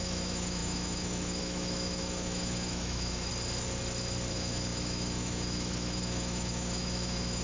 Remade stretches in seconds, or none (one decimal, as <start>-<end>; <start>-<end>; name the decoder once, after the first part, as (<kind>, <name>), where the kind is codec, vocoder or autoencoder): 0.0-3.3 (autoencoder, DAC-VAE); 4.3-7.4